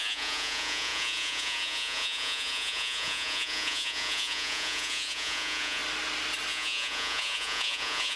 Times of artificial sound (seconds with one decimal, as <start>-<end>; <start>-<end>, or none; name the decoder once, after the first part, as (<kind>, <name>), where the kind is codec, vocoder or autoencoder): 0.0-5.8 (vocoder, Vocos); 6.5-8.2